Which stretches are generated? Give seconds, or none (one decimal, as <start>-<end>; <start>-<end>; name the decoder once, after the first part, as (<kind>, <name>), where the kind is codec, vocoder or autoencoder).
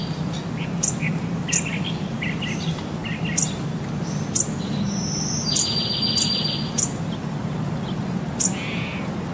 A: none